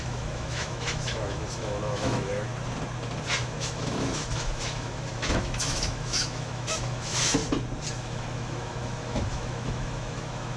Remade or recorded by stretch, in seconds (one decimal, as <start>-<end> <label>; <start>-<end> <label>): 0.0-2.5 remade; 2.5-3.4 recorded; 3.4-7.4 remade; 7.4-7.9 recorded; 7.9-10.6 remade